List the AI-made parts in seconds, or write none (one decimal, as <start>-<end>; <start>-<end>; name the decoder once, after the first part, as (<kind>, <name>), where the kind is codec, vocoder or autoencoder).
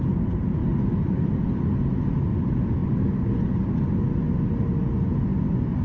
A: none